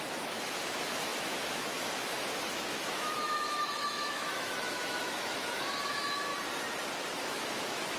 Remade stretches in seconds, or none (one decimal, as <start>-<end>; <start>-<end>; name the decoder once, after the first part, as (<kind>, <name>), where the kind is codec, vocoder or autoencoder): 0.0-6.3 (autoencoder, DAC-VAE); 7.1-8.0